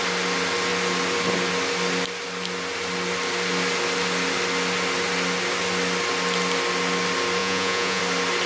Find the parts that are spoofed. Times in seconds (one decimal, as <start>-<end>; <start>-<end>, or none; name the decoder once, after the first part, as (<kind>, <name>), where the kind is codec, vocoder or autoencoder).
7.4-8.0 (vocoder, Vocos)